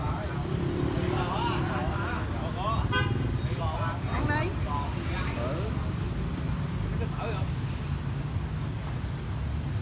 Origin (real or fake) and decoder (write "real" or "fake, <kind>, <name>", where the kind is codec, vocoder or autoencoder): real